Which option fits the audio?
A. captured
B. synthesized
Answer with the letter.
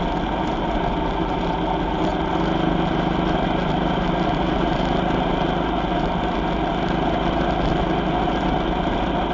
A